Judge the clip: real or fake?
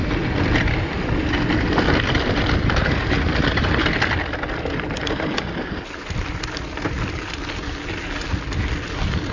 real